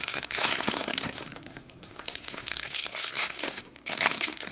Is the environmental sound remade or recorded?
remade